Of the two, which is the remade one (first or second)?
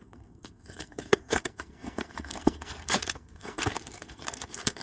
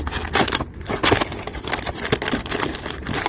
first